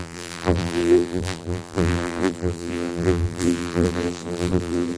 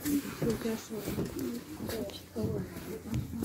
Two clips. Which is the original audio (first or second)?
second